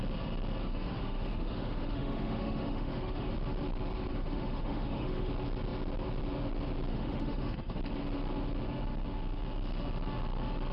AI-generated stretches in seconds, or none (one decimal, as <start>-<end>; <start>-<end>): 0.6-3.3; 4.1-5.3; 6.9-7.8